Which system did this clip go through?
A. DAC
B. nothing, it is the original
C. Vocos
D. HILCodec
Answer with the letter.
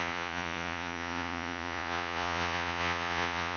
C